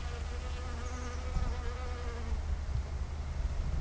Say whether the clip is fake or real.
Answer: real